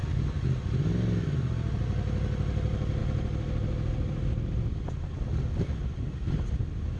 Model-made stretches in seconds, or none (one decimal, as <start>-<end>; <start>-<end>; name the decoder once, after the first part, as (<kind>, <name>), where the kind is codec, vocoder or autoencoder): none